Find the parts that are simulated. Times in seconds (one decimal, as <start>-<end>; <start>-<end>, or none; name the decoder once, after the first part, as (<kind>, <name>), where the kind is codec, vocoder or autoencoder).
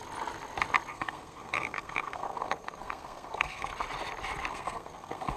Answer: 0.9-3.7 (codec, SNAC); 4.5-5.4